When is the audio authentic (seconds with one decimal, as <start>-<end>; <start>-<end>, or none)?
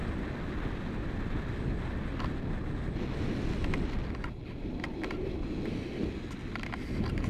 0.0-7.3